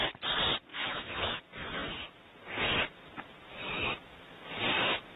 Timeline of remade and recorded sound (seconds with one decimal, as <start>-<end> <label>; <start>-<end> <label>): 0.0-0.7 recorded; 0.7-1.4 remade; 1.4-5.2 recorded